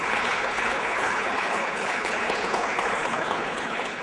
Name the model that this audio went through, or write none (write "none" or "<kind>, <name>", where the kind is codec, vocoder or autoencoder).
codec, HILCodec